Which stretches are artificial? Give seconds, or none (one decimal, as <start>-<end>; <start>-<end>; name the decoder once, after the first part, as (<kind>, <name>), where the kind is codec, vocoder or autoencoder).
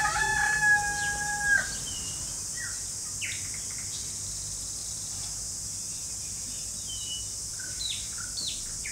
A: 4.8-5.5 (vocoder, BigVGAN v2); 5.9-6.6; 7.5-8.2